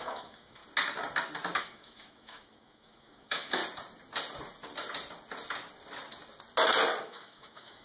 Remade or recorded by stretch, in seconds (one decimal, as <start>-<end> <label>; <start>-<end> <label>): 0.0-0.6 remade; 0.6-1.6 recorded; 1.6-3.6 remade; 3.6-7.0 recorded; 7.0-7.8 remade